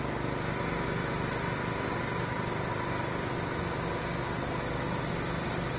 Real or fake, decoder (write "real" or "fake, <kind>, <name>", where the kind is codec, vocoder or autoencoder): real